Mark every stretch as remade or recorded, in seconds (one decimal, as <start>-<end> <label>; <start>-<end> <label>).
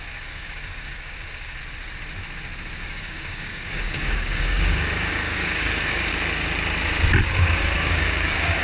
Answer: 0.0-1.6 remade; 1.6-2.8 recorded; 2.8-6.1 remade; 6.1-7.2 recorded; 7.2-8.6 remade